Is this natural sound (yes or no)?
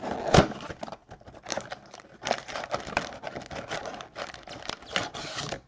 yes